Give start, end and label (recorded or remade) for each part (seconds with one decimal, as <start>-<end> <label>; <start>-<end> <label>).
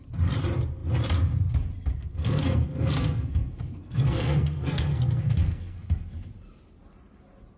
0.0-1.9 recorded; 1.9-6.3 remade; 6.3-7.6 recorded